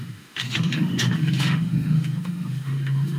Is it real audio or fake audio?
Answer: fake